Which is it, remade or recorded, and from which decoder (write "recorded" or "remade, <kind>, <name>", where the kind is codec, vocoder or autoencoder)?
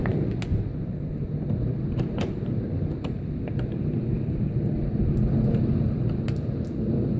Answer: recorded